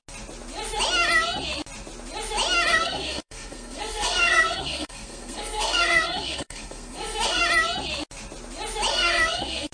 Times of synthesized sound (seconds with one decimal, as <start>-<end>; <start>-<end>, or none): 2.7-7.4; 8.9-9.7